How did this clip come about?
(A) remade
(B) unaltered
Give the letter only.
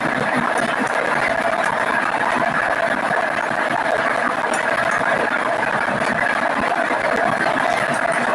A